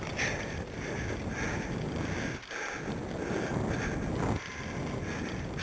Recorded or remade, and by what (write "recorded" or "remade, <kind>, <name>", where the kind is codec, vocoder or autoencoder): recorded